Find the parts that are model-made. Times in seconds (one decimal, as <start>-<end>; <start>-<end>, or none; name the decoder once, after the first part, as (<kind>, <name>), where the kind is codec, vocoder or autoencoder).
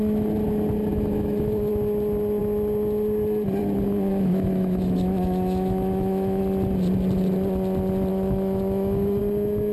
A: 0.9-1.7 (autoencoder, DAC-VAE); 4.1-6.4; 8.1-9.2